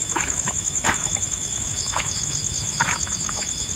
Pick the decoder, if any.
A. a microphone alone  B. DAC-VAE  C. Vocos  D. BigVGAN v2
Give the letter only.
B